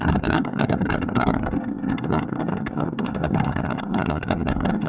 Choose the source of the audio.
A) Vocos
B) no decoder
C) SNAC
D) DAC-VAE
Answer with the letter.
C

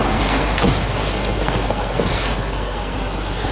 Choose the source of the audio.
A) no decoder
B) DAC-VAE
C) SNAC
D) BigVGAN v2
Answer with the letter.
C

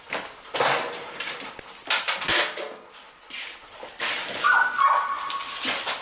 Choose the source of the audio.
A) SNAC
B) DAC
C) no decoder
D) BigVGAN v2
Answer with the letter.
C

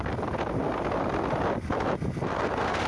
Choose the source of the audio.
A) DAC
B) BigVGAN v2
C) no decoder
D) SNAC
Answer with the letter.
C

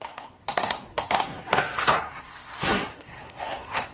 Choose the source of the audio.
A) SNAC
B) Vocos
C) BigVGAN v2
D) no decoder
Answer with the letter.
A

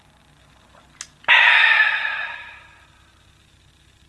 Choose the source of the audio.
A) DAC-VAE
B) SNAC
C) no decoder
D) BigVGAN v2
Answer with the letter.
C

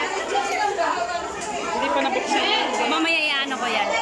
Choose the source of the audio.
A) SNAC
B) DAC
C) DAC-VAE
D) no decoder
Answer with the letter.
D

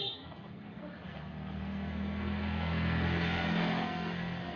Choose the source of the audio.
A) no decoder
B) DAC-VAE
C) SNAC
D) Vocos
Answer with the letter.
C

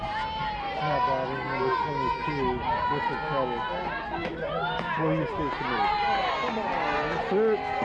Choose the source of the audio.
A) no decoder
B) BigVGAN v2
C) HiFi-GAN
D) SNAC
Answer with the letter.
A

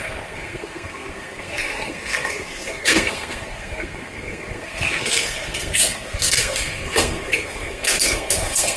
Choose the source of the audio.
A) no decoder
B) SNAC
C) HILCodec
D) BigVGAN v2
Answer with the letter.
B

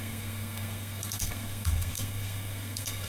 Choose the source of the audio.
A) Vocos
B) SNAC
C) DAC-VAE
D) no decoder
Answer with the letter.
B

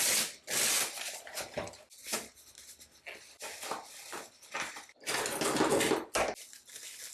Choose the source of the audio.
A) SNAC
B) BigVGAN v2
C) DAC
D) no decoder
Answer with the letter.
D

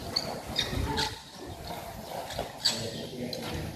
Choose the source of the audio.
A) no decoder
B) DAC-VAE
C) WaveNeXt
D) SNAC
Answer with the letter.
A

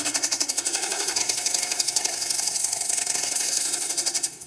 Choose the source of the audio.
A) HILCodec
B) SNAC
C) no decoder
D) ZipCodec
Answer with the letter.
B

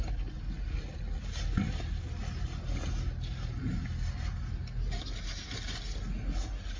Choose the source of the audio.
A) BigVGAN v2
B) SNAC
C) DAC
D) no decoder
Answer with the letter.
D